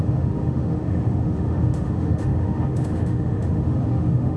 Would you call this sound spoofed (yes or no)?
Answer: yes